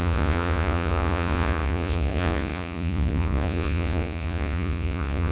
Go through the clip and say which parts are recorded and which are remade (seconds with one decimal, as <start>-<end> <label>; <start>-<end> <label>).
0.0-5.3 remade